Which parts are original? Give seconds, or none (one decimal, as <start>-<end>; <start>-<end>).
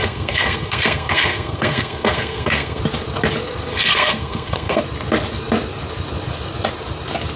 2.8-3.7; 4.8-7.4